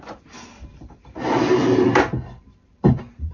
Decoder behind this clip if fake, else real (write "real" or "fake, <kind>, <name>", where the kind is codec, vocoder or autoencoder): fake, vocoder, BigVGAN v2